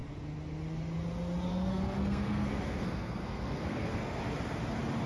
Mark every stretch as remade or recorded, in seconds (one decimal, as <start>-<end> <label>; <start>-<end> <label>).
0.0-1.5 recorded; 1.5-4.2 remade; 4.2-5.1 recorded